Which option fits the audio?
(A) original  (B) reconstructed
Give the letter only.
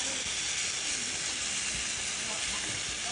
A